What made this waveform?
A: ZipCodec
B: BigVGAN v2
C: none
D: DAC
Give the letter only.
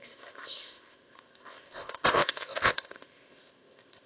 A